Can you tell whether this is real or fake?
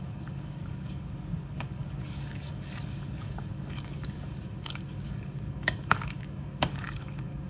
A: fake